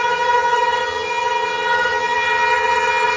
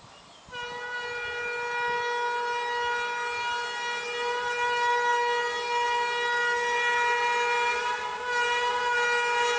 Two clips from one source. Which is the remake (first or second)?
first